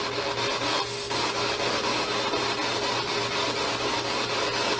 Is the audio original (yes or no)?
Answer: yes